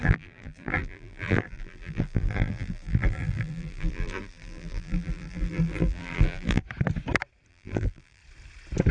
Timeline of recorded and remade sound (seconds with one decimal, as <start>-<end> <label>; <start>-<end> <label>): 0.0-6.6 remade; 6.6-7.5 recorded; 7.5-8.2 remade; 8.2-8.9 recorded